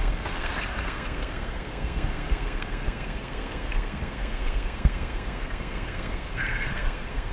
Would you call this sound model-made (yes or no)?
yes